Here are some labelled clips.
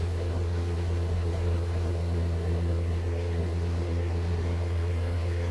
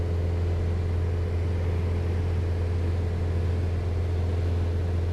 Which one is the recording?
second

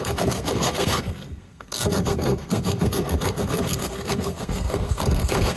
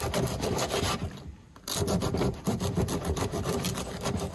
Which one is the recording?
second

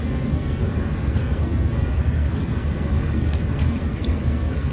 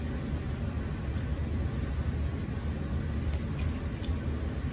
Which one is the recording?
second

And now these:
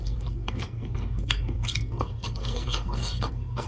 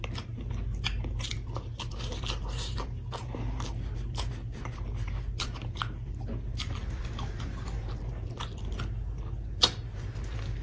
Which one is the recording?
second